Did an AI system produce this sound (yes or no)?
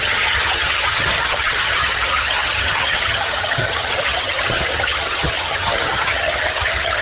yes